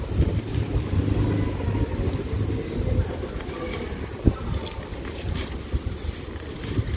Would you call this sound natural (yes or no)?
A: yes